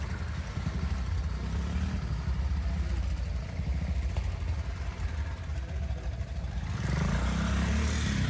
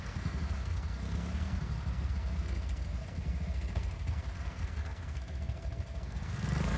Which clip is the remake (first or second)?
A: second